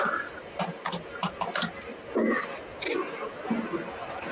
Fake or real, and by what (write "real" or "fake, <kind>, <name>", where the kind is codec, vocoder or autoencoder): real